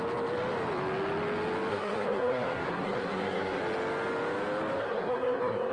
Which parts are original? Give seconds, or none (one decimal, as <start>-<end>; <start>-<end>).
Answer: 0.0-1.7; 3.6-4.8